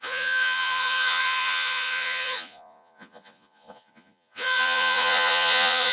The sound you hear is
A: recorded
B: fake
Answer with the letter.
B